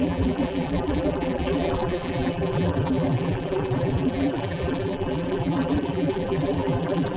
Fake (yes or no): yes